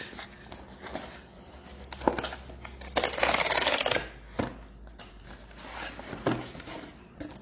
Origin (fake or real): real